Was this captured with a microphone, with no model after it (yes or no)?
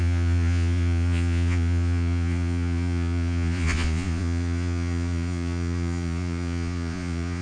no